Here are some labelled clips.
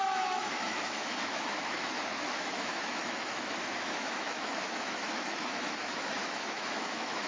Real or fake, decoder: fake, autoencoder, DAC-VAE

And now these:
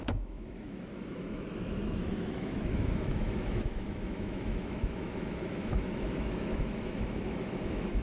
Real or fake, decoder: fake, autoencoder, DAC-VAE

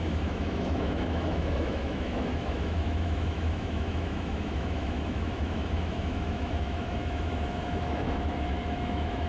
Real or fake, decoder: fake, autoencoder, DAC-VAE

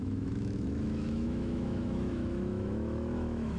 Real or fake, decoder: fake, autoencoder, DAC-VAE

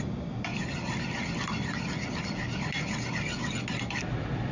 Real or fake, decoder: real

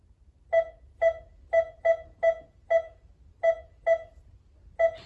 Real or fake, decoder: real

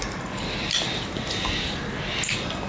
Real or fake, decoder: real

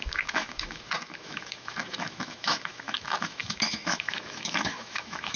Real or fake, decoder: fake, autoencoder, DAC-VAE